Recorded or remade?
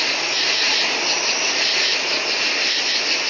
recorded